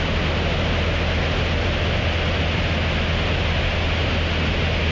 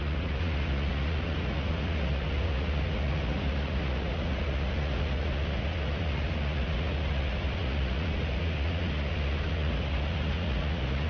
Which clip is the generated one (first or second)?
second